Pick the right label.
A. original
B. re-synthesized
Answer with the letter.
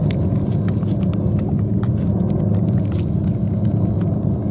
A